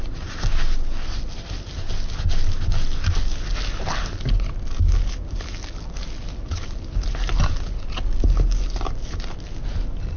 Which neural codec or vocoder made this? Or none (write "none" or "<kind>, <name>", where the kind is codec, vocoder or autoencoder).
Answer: none